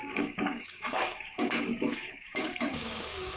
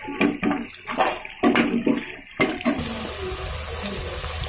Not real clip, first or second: first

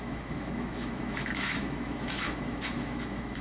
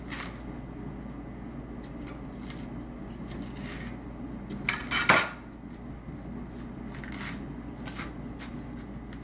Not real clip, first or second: first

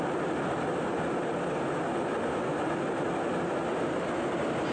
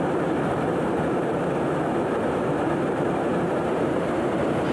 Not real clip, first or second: second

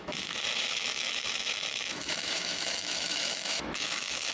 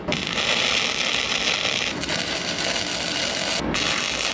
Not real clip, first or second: first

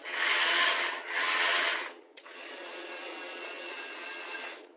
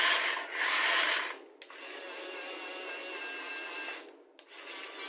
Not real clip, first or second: first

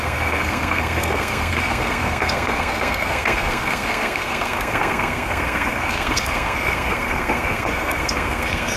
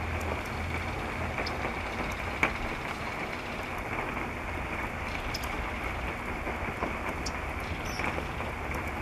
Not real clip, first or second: first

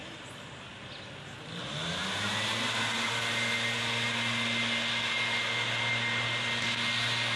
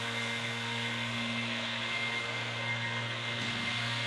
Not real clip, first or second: second